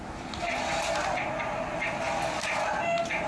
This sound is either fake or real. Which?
real